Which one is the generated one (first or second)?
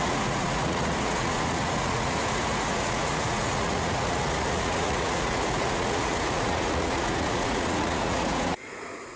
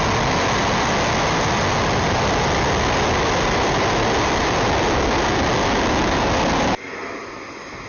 first